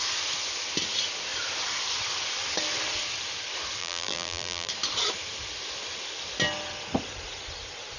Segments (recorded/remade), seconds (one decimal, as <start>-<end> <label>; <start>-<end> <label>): 0.0-3.8 recorded; 3.8-4.7 remade; 4.7-8.0 recorded